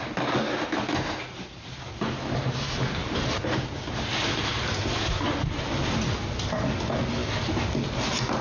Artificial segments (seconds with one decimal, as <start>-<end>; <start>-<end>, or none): 3.0-4.5; 7.2-8.4